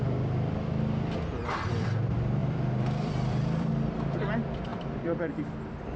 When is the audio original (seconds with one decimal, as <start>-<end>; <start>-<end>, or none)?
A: 0.0-1.4; 2.0-2.4; 3.7-4.7; 5.2-6.0

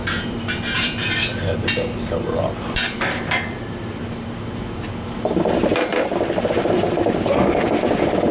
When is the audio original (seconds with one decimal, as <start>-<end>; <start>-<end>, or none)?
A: none

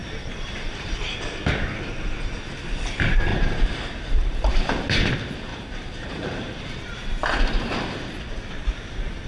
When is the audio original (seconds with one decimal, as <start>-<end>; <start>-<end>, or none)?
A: 1.2-3.3; 4.7-5.5; 6.6-9.3

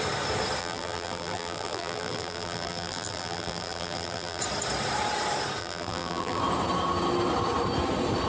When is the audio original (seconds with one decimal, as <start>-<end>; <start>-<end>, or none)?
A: 0.0-0.6; 4.4-5.6; 6.4-8.3

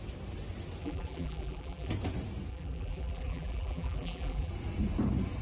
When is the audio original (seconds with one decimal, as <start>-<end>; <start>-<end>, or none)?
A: 0.0-0.8; 1.9-2.5; 4.5-5.4

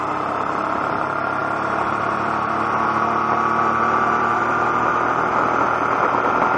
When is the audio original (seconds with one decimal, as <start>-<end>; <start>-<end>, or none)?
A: 0.0-6.6

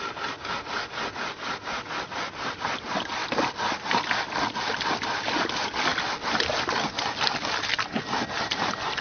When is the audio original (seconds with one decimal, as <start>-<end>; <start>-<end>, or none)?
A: 0.0-3.2; 5.4-5.9; 7.7-9.0

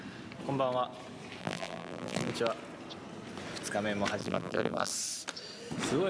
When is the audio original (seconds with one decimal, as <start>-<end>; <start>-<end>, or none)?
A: 0.0-1.4; 2.3-4.2; 4.9-6.1